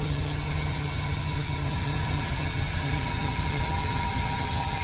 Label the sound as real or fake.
fake